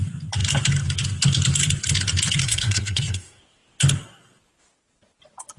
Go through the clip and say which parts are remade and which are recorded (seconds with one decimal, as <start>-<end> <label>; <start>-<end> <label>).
0.0-2.4 recorded; 2.4-3.4 remade; 3.4-5.6 recorded